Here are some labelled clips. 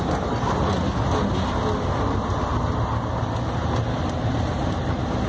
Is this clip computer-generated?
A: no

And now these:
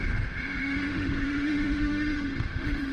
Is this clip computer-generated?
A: yes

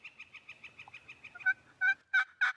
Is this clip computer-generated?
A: no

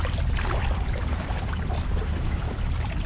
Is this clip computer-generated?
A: no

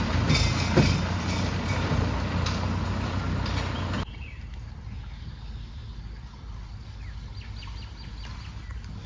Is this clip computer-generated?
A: no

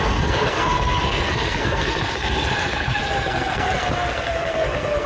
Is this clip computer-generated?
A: yes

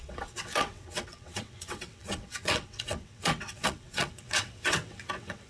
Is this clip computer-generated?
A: yes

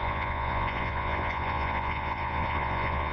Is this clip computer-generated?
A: yes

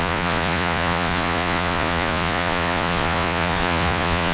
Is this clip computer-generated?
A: yes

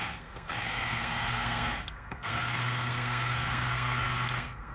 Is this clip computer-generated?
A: yes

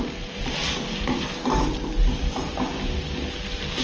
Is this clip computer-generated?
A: no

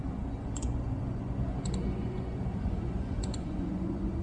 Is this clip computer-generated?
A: yes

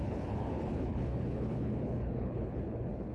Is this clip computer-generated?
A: yes